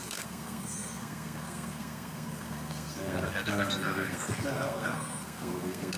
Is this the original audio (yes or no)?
no